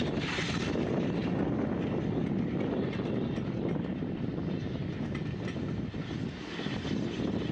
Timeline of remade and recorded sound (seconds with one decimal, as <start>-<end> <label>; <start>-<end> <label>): 0.0-7.5 recorded